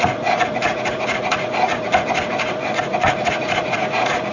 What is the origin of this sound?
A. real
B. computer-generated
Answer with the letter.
B